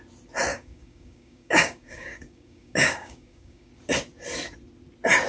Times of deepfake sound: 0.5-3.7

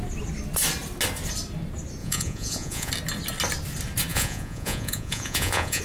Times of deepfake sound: 2.0-2.9; 4.1-5.8

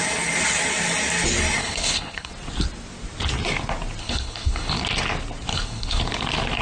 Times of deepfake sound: 1.6-2.3; 4.0-4.8; 5.5-6.0

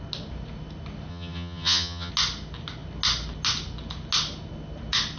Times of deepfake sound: 1.1-2.1

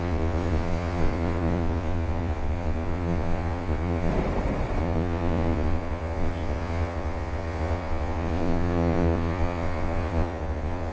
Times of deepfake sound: 0.0-4.1; 4.8-10.9

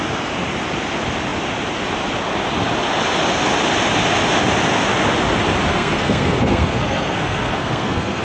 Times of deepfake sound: 5.7-8.2

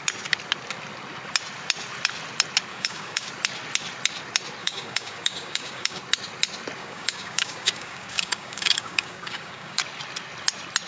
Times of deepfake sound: 2.7-3.3; 4.6-6.0; 6.8-9.8

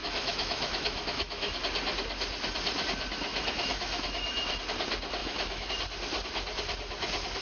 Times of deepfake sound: 0.0-1.6; 3.3-4.6; 5.2-5.7